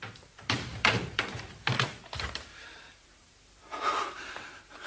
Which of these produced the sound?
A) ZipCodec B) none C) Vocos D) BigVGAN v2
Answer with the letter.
D